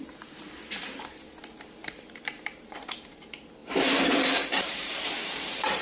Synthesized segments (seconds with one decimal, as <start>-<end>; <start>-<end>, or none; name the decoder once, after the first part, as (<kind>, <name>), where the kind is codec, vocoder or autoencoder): 1.8-3.0 (vocoder, BigVGAN v2); 3.6-5.8